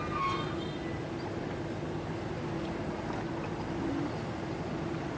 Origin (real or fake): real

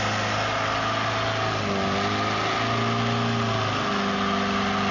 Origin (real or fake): real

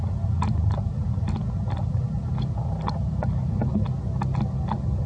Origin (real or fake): real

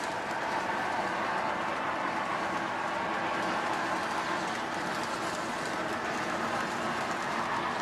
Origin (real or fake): real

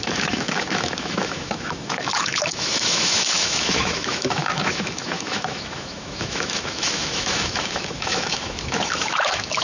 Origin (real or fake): fake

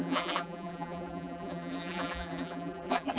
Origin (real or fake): fake